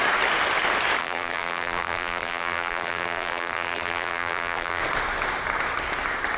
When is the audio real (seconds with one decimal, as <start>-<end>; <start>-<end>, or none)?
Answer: 0.0-1.0; 4.8-6.4